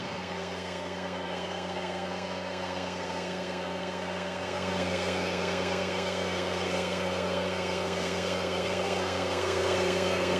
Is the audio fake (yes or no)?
yes